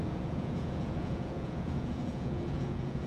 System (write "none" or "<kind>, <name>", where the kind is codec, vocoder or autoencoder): vocoder, Vocos